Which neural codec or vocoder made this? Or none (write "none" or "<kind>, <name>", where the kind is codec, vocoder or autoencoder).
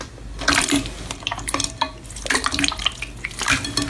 none